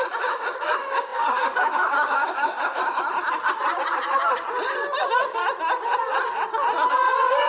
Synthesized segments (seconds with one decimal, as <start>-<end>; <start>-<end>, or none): 0.0-2.8; 5.0-5.4; 6.9-7.5